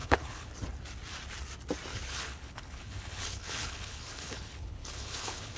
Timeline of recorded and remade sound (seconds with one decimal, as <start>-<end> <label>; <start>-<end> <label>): 0.0-0.5 remade; 0.5-1.9 recorded; 1.9-5.6 remade